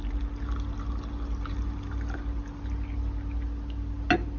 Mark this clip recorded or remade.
recorded